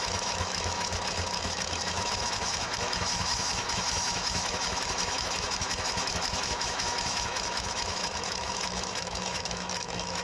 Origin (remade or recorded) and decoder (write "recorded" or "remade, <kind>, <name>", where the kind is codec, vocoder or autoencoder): remade, autoencoder, DAC-VAE